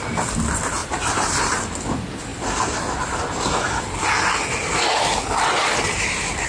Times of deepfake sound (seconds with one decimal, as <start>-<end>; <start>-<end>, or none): 0.8-1.7